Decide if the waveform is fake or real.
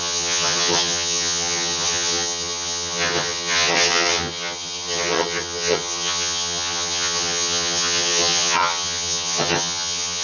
fake